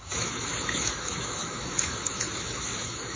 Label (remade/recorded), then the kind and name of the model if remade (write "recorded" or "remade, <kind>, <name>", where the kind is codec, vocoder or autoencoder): remade, autoencoder, DAC-VAE